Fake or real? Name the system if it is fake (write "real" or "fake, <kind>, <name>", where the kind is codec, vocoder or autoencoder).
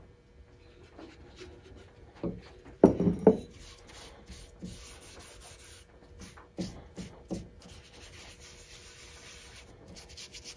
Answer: real